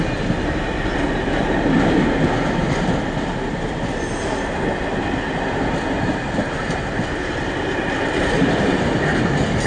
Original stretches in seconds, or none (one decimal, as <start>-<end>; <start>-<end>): 0.0-6.4